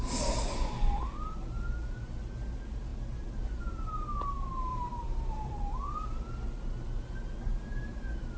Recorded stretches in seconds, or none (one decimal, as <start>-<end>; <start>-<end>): 0.0-4.7; 5.6-8.4